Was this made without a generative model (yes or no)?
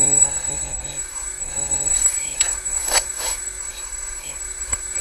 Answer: no